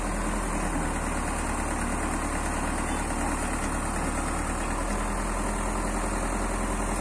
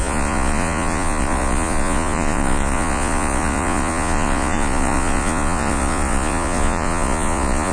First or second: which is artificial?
second